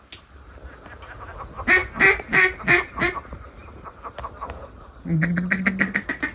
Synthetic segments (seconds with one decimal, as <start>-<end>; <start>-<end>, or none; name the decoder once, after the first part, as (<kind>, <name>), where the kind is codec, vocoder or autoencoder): none